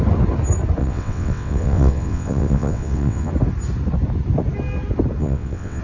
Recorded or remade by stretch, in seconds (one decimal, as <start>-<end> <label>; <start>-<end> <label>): 0.0-0.8 recorded; 0.8-3.3 remade; 3.3-5.2 recorded; 5.2-5.8 remade